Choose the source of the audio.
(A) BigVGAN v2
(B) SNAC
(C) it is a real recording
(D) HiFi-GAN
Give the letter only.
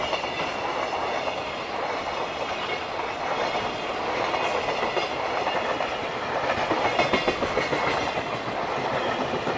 C